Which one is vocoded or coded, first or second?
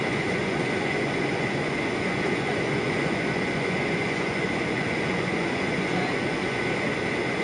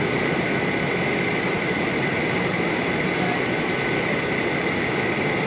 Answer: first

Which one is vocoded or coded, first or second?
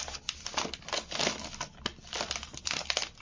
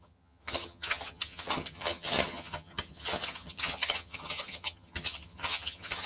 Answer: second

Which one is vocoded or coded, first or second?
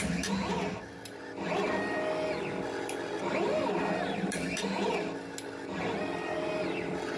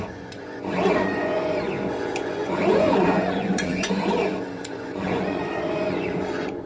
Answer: second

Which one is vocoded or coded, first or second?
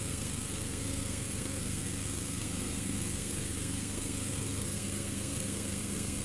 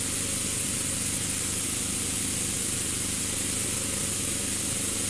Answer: first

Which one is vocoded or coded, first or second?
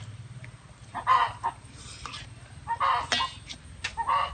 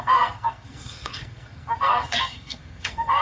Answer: second